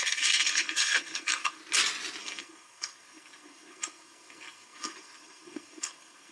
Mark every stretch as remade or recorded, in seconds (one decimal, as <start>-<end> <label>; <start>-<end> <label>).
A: 0.0-1.6 remade; 1.6-2.2 recorded; 2.2-6.3 remade